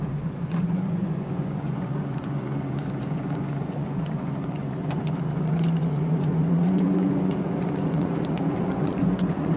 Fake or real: fake